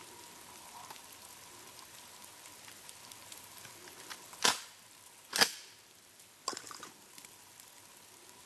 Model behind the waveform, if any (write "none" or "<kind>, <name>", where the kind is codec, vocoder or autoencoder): none